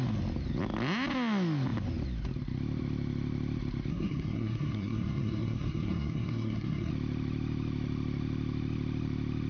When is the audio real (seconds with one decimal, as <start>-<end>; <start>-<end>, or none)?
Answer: 0.0-3.9; 6.9-9.5